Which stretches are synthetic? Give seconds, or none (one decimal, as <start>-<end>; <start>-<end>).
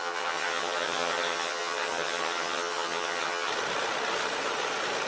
0.0-3.5